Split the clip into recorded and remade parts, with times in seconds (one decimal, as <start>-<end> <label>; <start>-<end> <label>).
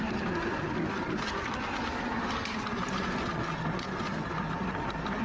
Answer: 0.0-0.7 remade; 0.7-5.2 recorded